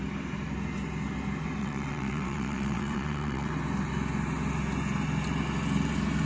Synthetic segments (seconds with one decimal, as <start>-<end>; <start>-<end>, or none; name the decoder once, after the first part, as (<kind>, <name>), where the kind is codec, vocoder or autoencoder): 1.6-3.5 (vocoder, WaveNeXt)